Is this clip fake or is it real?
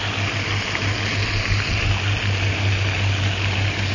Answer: real